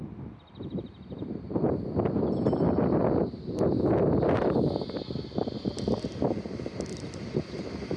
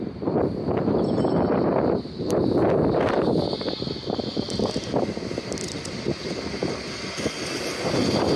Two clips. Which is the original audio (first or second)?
first